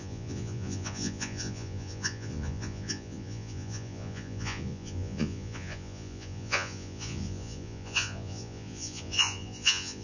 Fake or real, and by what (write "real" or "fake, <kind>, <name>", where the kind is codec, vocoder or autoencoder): fake, vocoder, Vocos